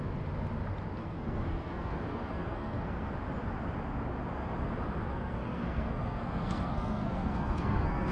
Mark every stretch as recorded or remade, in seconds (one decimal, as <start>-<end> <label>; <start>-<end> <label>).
0.0-1.0 recorded; 1.0-3.1 remade; 3.1-5.1 recorded; 5.1-8.1 remade